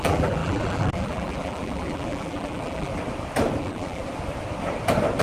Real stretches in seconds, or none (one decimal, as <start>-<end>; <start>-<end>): 2.9-3.6; 4.0-5.2